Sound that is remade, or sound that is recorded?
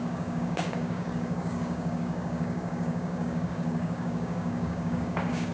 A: remade